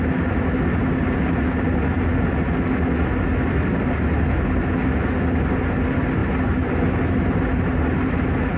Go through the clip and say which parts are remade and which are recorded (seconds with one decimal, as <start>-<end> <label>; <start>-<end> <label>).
0.0-8.6 recorded